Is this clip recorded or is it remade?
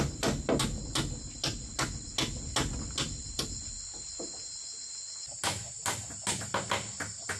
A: recorded